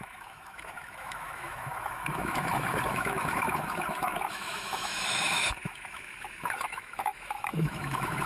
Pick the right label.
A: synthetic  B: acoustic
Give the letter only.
A